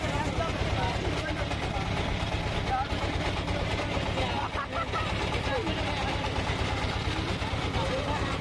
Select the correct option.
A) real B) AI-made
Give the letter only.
A